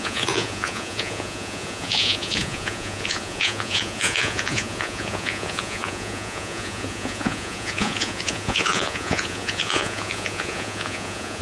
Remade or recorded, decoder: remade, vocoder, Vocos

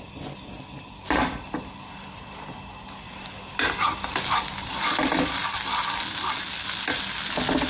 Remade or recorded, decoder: recorded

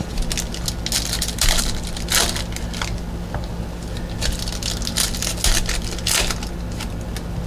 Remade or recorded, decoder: recorded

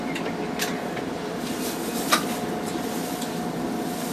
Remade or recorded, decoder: recorded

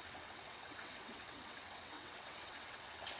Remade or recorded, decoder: remade, vocoder, WaveNeXt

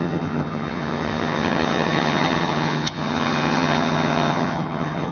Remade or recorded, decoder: remade, vocoder, HiFi-GAN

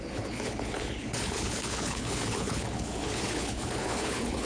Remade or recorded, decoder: remade, codec, HILCodec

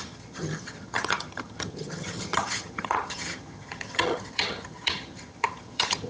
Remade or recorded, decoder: remade, vocoder, HiFi-GAN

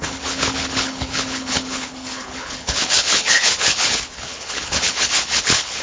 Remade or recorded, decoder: remade, codec, HILCodec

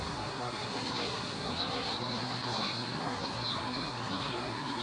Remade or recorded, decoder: remade, codec, SNAC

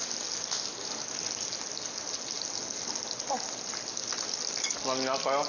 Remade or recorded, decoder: recorded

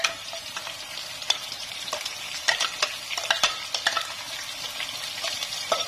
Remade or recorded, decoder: recorded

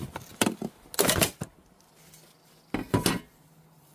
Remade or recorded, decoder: recorded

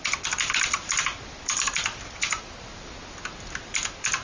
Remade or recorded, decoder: recorded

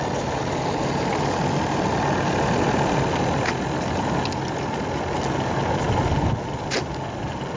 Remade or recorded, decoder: recorded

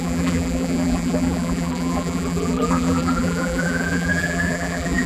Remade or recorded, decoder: remade, vocoder, BigVGAN v2